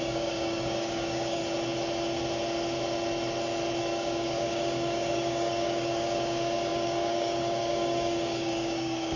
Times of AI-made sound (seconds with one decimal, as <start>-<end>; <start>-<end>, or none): 0.0-1.4; 3.8-9.2